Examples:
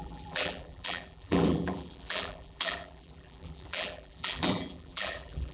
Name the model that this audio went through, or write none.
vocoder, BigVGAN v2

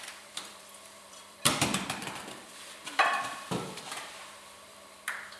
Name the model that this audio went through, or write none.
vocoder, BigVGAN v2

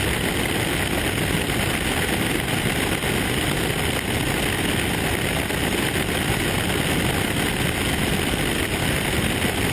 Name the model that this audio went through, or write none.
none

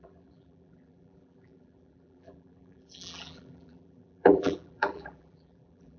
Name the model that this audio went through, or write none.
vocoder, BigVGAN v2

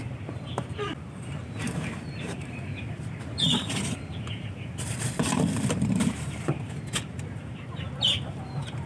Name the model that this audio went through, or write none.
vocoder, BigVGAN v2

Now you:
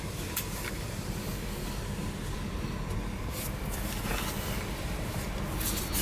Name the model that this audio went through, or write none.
none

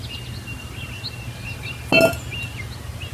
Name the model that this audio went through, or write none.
none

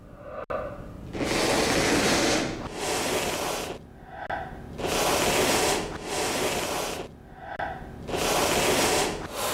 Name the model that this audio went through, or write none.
none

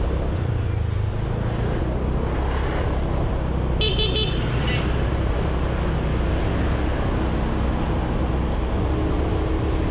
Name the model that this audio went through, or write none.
none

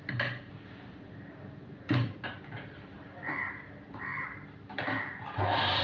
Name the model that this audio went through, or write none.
vocoder, BigVGAN v2